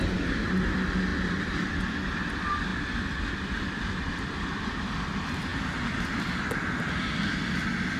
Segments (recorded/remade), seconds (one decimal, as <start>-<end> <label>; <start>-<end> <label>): 0.0-5.5 recorded; 5.5-6.4 remade; 6.4-8.0 recorded